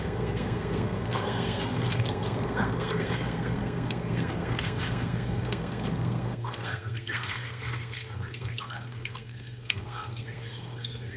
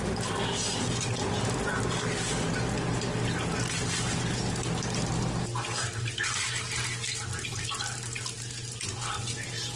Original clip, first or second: second